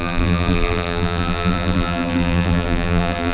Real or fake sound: fake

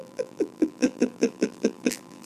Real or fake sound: fake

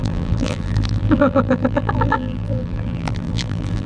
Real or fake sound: fake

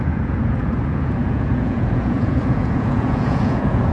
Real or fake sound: fake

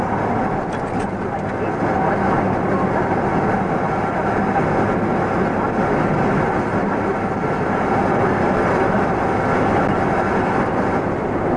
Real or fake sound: real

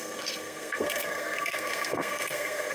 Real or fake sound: fake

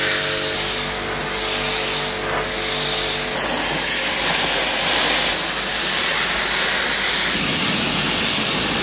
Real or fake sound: real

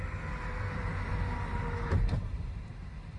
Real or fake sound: real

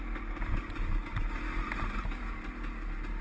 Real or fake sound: real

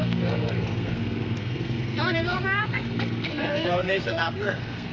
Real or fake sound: fake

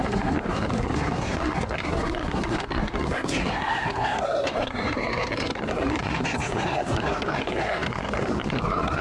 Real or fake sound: fake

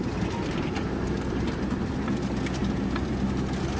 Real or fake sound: real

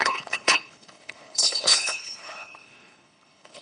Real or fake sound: fake